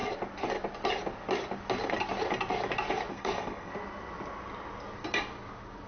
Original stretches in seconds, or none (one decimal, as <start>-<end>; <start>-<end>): 0.0-3.1; 3.7-5.9